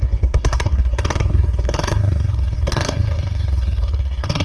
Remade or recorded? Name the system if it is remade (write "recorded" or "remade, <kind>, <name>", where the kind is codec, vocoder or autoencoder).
remade, codec, SNAC